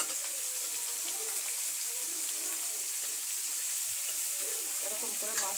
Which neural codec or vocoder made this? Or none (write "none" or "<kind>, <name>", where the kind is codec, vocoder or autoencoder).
none